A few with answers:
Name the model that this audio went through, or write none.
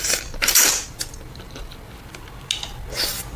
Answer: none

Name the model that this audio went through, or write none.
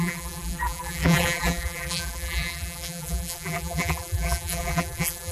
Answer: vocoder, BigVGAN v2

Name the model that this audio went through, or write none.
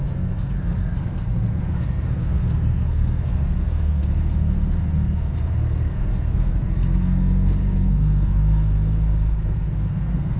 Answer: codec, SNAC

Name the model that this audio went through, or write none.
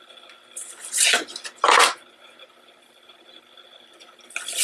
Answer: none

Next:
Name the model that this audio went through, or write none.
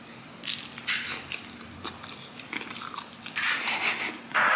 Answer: none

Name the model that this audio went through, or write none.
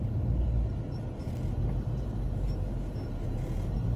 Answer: none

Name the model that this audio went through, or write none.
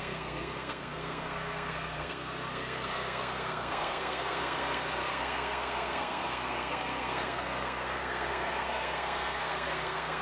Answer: codec, SNAC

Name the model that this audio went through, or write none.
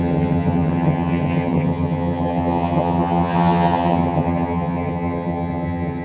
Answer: vocoder, HiFi-GAN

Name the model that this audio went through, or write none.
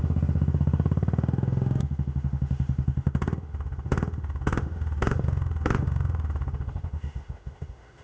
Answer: autoencoder, DAC-VAE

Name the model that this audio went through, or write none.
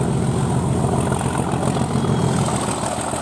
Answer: none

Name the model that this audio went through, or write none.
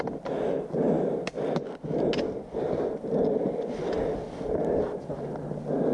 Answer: none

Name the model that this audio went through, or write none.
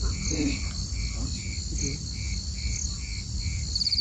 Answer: none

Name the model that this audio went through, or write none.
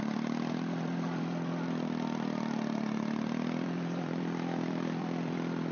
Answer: vocoder, BigVGAN v2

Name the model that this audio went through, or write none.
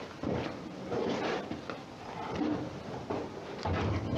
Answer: none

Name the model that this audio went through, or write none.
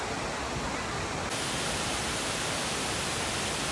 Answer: none